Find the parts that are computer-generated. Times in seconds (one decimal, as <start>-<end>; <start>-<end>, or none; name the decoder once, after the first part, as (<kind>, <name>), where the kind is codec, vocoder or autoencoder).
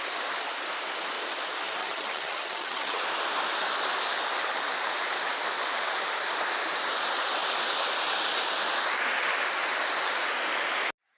1.8-3.0 (vocoder, HiFi-GAN)